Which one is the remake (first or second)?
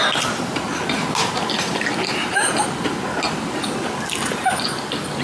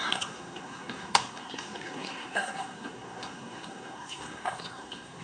second